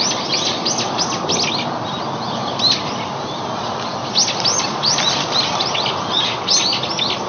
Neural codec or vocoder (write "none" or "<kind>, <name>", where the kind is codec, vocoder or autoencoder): none